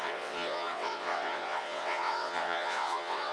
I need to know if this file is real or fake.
fake